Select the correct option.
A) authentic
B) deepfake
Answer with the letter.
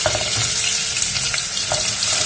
A